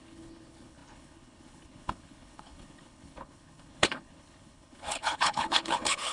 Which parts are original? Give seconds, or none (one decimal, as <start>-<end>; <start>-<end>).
none

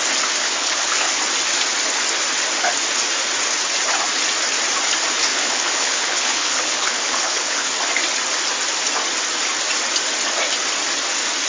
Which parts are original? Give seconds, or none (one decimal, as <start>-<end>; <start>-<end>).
0.0-0.4; 1.2-5.3; 7.7-11.5